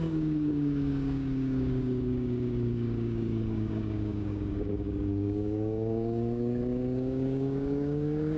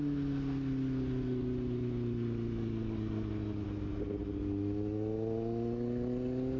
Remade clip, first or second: first